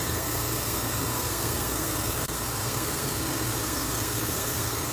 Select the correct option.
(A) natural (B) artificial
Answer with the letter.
B